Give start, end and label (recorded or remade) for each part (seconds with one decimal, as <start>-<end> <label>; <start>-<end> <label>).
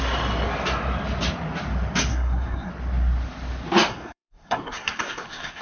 0.0-2.1 recorded; 2.1-2.7 remade; 2.7-3.9 recorded; 3.9-5.6 remade